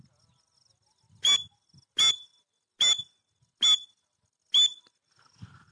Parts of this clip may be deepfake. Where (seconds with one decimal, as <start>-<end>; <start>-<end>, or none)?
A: none